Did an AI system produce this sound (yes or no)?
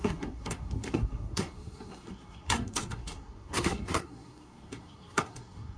yes